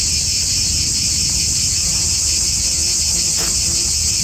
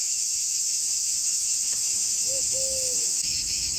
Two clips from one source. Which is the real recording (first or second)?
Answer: first